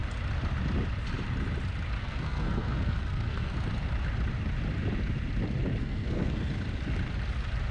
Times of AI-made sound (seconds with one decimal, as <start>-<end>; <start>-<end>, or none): 2.0-3.5; 5.8-6.5